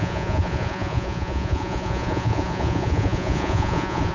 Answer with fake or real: fake